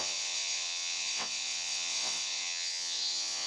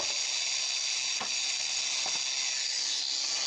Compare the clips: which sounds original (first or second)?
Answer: second